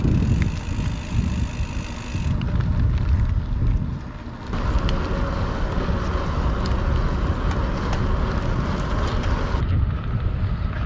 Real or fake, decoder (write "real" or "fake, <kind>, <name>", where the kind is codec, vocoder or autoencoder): real